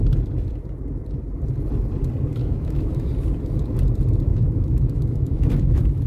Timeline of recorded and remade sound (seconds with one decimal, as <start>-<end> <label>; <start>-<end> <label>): 0.0-2.4 recorded; 2.4-3.1 remade; 3.1-4.3 recorded; 4.3-6.1 remade

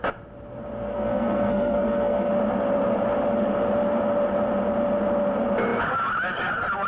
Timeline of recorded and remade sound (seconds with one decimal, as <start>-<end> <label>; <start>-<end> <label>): 0.0-0.9 recorded; 0.9-2.3 remade; 2.3-6.9 recorded